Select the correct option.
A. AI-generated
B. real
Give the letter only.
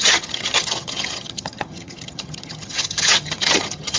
A